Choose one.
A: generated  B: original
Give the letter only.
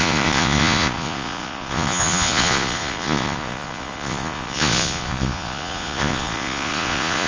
A